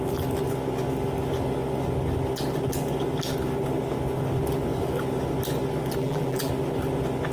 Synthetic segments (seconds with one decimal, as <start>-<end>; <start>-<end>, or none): 6.0-6.5